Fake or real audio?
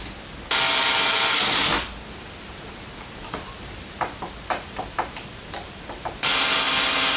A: real